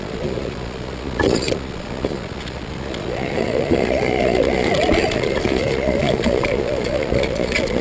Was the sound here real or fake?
fake